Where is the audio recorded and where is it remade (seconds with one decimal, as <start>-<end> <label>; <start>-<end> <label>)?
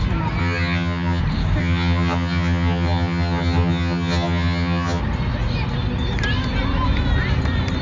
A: 0.0-0.4 recorded; 0.4-1.2 remade; 1.2-1.6 recorded; 1.6-5.0 remade; 5.0-7.8 recorded